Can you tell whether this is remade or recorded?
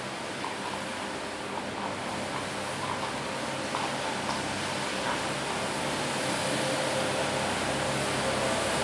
recorded